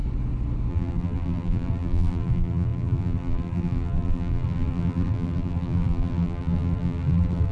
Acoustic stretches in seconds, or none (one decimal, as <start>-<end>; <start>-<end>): 0.0-0.7

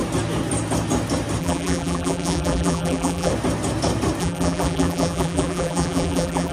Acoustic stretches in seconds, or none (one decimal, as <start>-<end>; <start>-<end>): 0.0-1.4; 3.3-4.2